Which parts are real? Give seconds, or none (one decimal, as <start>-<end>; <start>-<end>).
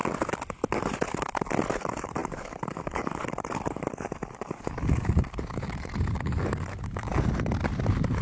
0.0-1.8; 7.1-8.2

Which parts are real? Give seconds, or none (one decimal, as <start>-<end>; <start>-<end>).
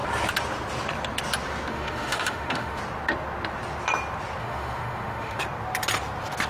0.0-1.7; 2.8-4.4; 5.4-6.5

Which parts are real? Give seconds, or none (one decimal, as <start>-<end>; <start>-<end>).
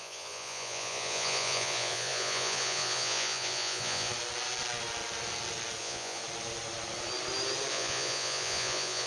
4.1-5.8; 6.2-7.7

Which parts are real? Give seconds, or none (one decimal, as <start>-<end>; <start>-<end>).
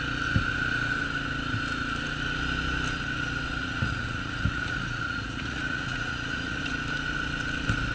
0.0-3.6; 6.6-7.9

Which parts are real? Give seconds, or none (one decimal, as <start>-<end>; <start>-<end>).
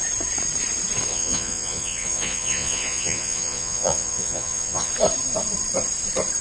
0.0-1.1; 4.9-6.4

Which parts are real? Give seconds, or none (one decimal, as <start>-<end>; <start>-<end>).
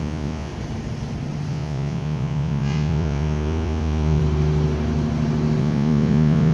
0.5-1.5; 4.2-5.6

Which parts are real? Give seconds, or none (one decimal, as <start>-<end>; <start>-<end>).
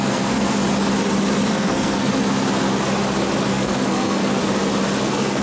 0.6-1.5; 2.1-3.5; 4.4-5.0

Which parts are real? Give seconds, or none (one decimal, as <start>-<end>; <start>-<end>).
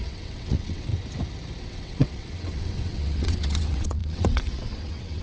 0.9-1.6